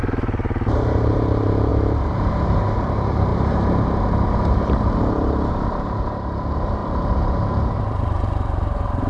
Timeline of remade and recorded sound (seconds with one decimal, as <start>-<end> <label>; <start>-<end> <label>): 0.0-9.1 remade